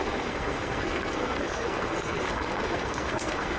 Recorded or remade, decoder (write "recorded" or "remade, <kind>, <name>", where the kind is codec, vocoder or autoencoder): remade, codec, SNAC